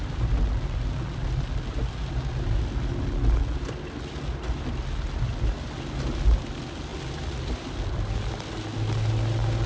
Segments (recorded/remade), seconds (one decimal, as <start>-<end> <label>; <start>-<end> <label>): 0.0-9.7 recorded